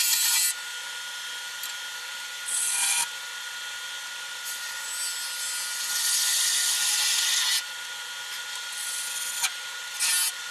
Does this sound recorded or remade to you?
recorded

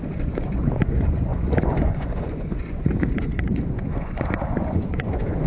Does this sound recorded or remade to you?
remade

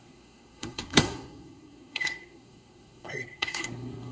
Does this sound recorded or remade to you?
remade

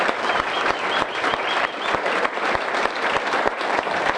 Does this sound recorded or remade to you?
remade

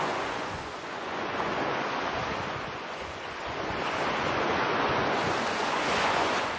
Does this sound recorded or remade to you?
remade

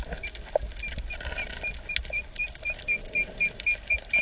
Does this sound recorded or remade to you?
recorded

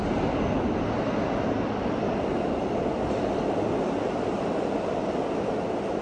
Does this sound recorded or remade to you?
recorded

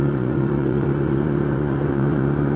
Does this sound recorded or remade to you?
remade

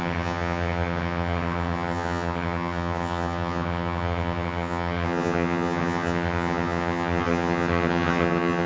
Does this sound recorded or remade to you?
remade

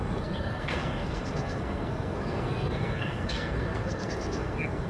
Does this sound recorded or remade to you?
remade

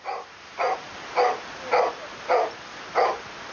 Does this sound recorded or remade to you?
recorded